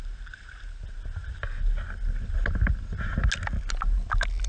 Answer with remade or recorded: recorded